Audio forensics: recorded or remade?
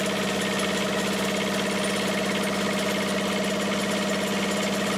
recorded